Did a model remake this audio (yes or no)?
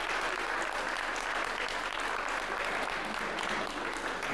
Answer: no